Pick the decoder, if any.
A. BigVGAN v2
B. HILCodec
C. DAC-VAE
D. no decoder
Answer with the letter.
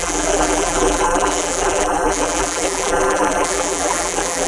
A